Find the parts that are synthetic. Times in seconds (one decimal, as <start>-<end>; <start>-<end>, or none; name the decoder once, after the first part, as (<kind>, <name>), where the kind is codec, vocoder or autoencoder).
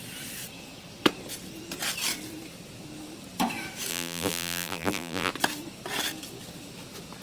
3.9-5.3 (vocoder, BigVGAN v2)